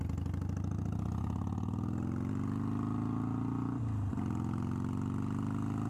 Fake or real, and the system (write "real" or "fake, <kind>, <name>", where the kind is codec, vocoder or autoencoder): real